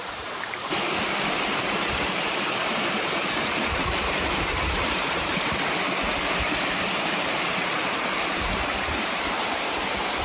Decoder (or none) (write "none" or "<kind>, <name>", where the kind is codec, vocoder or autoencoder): vocoder, BigVGAN v2